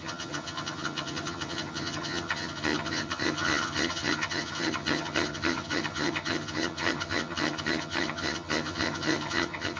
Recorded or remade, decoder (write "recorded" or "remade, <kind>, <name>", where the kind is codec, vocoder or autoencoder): remade, vocoder, HiFi-GAN